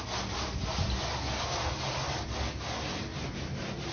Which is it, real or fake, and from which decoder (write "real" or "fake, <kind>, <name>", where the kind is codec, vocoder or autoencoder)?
real